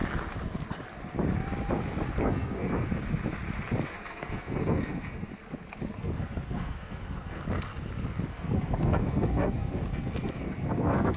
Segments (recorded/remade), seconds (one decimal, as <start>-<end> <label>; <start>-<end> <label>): 0.0-2.2 recorded; 2.2-2.9 remade; 2.9-3.9 recorded; 3.9-5.3 remade; 5.3-6.0 recorded; 6.0-7.4 remade; 7.4-8.3 recorded; 8.3-11.2 remade